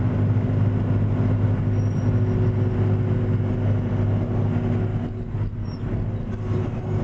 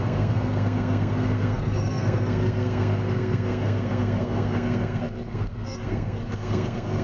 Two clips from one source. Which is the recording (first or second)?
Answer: first